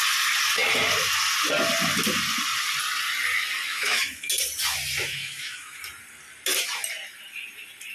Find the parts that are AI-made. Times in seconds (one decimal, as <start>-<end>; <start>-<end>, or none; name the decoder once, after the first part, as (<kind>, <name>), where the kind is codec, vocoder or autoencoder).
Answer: 3.7-4.3 (autoencoder, DAC-VAE); 5.0-5.8